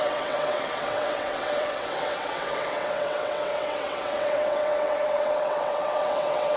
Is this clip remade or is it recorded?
remade